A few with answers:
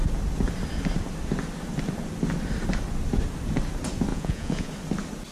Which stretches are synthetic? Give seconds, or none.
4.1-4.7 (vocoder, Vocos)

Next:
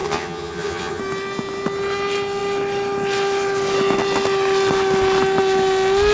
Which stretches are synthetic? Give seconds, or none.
0.0-1.0 (vocoder, HiFi-GAN)

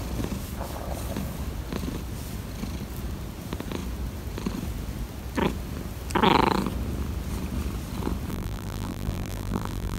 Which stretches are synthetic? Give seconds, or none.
8.3-10.0 (vocoder, BigVGAN v2)

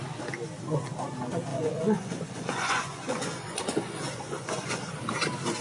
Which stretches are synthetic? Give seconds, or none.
1.5-4.9 (vocoder, Vocos)

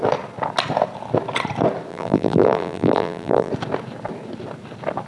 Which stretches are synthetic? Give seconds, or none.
1.9-3.5 (vocoder, BigVGAN v2)